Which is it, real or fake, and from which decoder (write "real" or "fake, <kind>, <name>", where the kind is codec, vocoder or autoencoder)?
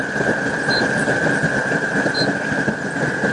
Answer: real